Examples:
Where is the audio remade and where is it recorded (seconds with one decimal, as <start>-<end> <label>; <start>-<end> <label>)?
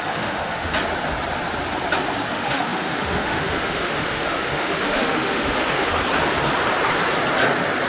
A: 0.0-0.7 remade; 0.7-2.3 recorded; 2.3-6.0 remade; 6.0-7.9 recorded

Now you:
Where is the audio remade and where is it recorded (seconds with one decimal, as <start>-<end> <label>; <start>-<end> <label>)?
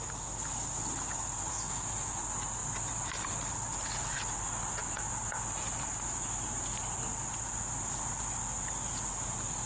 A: 0.0-1.5 recorded; 1.5-2.2 remade; 2.2-9.7 recorded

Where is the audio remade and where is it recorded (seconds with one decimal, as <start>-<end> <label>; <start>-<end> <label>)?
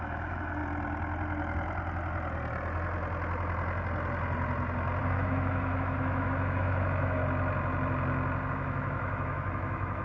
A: 0.0-0.6 remade; 0.6-5.0 recorded; 5.0-7.2 remade; 7.2-8.5 recorded; 8.5-10.0 remade